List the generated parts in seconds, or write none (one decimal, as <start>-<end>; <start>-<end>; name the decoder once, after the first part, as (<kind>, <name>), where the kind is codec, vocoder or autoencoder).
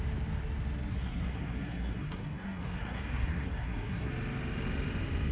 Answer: 0.9-4.1 (codec, SNAC)